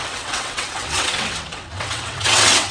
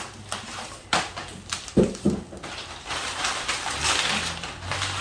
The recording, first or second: second